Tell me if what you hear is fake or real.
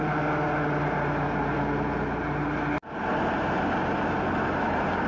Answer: real